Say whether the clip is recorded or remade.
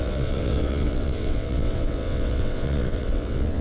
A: remade